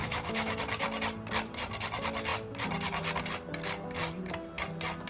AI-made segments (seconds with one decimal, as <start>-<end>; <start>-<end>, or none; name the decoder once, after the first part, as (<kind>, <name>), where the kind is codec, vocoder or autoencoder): 0.0-0.6 (autoencoder, DAC-VAE)